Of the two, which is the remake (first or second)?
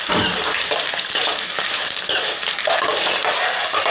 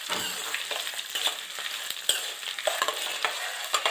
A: first